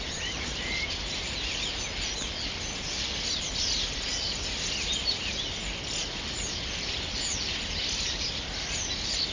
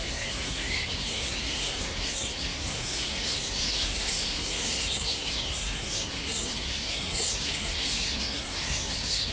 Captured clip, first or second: first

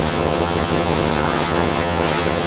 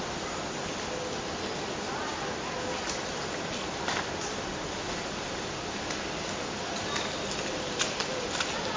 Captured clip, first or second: second